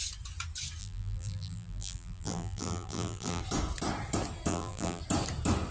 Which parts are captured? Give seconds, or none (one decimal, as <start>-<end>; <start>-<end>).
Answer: 0.0-0.8; 3.4-4.5; 5.0-5.7